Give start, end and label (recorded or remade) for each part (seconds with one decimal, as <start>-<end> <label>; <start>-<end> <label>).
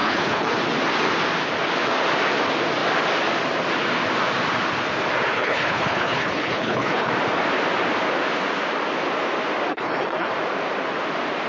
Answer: 0.0-0.5 remade; 0.5-5.3 recorded; 5.3-7.1 remade; 7.1-9.7 recorded; 9.7-10.3 remade; 10.3-11.5 recorded